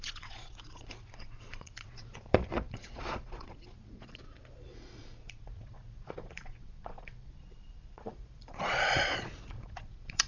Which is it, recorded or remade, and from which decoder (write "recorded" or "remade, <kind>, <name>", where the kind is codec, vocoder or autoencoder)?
remade, vocoder, Vocos